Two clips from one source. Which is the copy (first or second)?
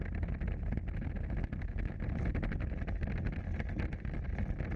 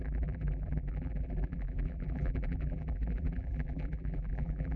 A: second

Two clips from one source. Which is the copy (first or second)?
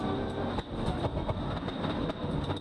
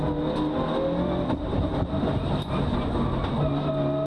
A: first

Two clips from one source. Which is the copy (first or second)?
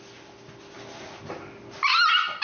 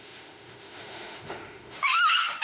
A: second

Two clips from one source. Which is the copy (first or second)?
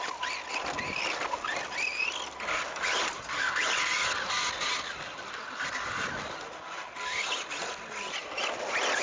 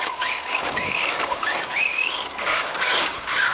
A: second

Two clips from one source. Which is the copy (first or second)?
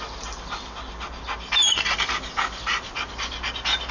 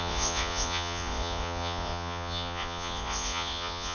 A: second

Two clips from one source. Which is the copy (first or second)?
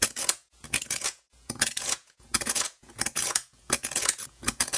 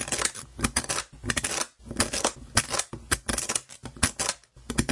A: first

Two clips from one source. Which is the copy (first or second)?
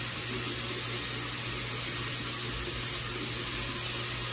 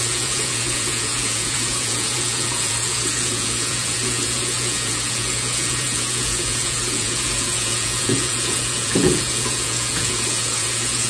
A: second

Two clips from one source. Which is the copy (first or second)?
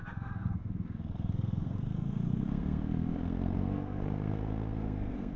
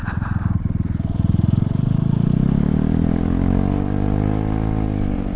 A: first